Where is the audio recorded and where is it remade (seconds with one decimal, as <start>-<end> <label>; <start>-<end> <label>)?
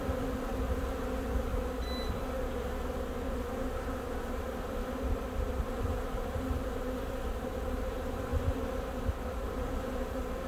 0.0-10.5 recorded